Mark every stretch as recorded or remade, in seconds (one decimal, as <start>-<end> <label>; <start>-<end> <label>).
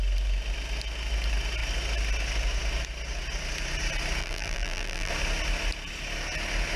0.0-4.2 recorded; 4.2-5.1 remade; 5.1-6.8 recorded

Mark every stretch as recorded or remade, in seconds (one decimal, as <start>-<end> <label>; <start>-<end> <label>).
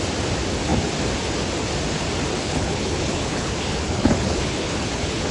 0.0-2.4 recorded; 2.4-5.3 remade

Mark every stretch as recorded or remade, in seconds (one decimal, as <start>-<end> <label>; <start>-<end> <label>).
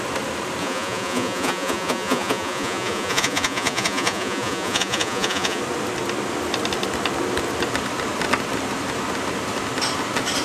0.0-0.6 recorded; 0.6-5.6 remade; 5.6-10.4 recorded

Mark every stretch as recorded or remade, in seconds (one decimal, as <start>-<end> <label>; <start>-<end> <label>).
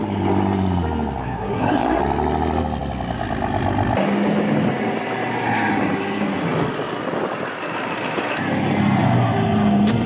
0.0-1.2 recorded; 1.2-2.0 remade; 2.0-10.1 recorded